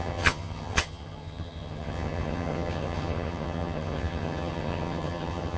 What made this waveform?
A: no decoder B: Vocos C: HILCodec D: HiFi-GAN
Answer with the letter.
D